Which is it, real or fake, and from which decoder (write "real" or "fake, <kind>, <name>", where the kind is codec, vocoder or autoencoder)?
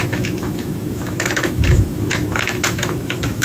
fake, autoencoder, DAC-VAE